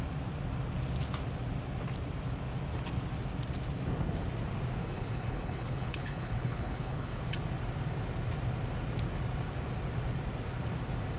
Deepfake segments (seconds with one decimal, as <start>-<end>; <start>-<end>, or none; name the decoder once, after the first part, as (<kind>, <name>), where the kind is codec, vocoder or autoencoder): 4.8-7.2 (codec, HILCodec)